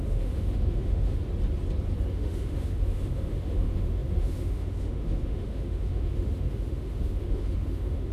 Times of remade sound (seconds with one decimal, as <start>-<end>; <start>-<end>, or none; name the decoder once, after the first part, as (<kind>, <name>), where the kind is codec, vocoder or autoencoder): 0.0-1.2 (autoencoder, DAC-VAE); 2.1-8.1

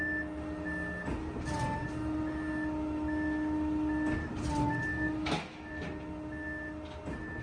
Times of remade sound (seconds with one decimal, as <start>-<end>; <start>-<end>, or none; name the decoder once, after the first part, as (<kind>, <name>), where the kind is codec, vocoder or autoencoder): 4.9-5.7 (autoencoder, DAC-VAE)

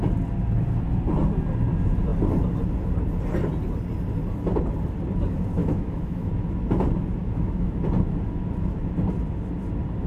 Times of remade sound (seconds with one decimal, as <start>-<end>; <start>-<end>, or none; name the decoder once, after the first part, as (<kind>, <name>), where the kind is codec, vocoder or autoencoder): 5.6-6.3 (autoencoder, DAC-VAE); 7.2-7.8